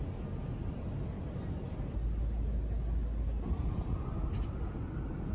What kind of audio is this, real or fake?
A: real